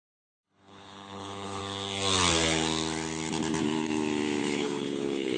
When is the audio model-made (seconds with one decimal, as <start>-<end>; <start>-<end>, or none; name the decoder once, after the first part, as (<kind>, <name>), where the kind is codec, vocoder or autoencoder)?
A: 0.0-1.6 (codec, HILCodec); 4.4-5.4

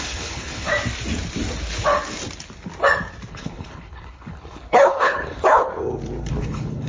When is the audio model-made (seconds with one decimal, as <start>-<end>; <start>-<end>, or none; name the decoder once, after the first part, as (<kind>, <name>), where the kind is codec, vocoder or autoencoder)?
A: 0.0-0.7 (codec, HILCodec); 3.3-5.7; 6.3-6.9

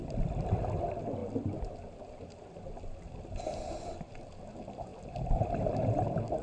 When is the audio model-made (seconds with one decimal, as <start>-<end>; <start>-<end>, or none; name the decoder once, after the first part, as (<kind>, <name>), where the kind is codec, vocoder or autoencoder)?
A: none

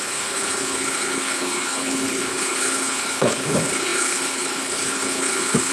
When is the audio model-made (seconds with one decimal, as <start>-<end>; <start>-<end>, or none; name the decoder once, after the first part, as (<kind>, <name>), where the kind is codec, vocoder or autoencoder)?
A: 0.0-5.7 (codec, HILCodec)

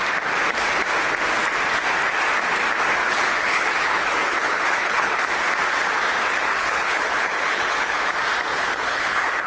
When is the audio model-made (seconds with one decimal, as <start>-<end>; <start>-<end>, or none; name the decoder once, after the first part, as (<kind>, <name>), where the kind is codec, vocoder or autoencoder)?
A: 3.0-5.2 (codec, HILCodec); 6.5-8.1; 8.5-9.5

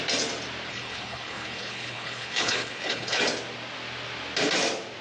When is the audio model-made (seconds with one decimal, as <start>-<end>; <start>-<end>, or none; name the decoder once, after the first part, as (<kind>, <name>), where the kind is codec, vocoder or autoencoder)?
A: 0.7-3.2 (codec, HILCodec)